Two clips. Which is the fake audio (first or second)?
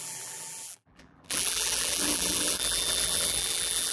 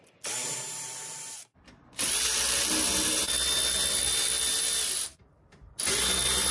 first